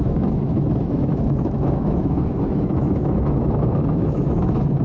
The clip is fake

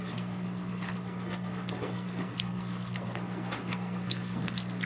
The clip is fake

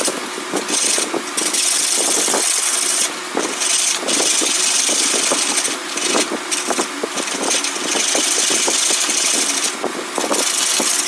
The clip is real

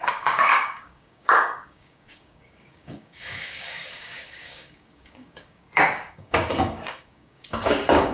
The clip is fake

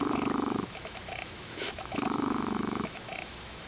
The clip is fake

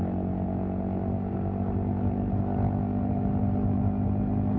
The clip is real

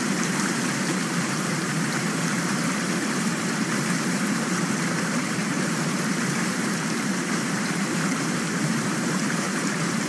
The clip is fake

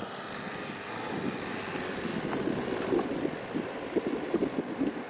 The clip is real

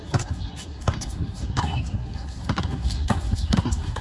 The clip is fake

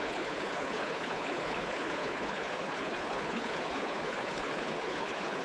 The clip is fake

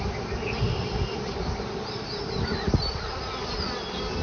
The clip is real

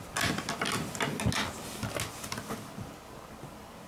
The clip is real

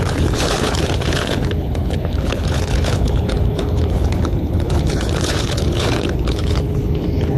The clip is fake